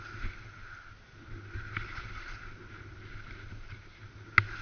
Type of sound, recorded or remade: recorded